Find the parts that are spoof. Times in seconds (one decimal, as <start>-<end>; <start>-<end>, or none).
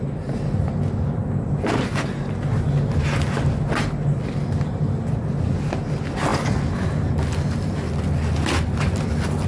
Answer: none